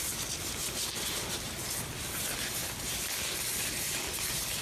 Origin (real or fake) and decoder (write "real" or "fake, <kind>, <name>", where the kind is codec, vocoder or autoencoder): real